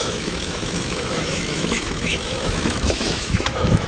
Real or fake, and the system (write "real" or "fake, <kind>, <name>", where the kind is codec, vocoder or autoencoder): fake, autoencoder, DAC-VAE